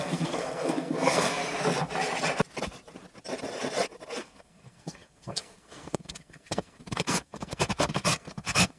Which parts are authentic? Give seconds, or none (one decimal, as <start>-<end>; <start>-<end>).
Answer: 1.4-4.2